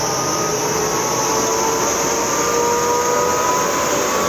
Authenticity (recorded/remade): recorded